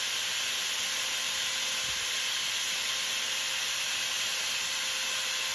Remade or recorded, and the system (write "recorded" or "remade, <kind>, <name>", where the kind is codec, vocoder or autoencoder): recorded